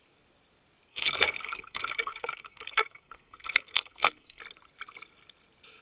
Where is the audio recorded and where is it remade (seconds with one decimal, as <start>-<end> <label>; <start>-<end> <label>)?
0.0-0.9 recorded; 0.9-4.4 remade; 4.4-5.8 recorded